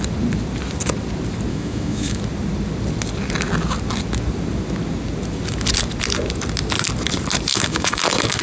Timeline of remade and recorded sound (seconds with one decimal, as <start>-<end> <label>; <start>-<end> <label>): 0.0-1.5 recorded; 1.5-2.2 remade; 2.2-7.5 recorded; 7.5-8.4 remade